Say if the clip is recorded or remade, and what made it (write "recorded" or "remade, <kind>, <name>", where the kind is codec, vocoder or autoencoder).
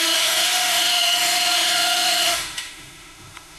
remade, autoencoder, DAC-VAE